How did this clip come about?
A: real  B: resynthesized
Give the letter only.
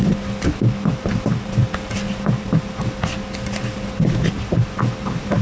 A